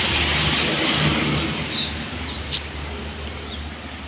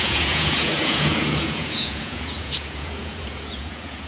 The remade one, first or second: second